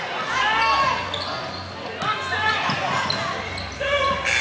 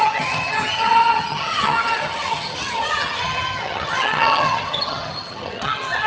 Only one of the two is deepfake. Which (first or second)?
second